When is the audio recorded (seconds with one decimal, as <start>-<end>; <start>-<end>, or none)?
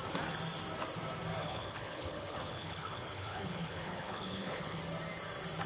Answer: 0.0-1.4; 4.8-5.7